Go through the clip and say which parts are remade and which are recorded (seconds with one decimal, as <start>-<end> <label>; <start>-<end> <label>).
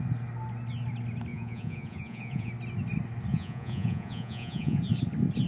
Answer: 0.0-1.3 recorded; 1.3-2.5 remade; 2.5-3.3 recorded; 3.3-4.8 remade; 4.8-5.5 recorded